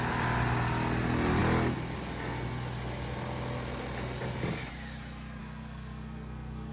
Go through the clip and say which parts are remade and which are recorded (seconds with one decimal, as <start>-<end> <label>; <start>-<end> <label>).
0.0-5.4 recorded; 5.4-6.7 remade